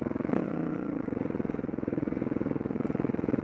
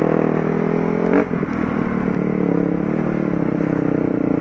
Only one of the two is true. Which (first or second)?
second